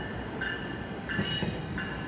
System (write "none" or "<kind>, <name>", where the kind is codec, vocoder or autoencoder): none